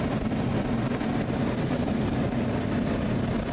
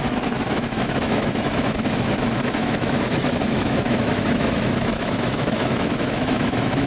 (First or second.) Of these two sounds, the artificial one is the second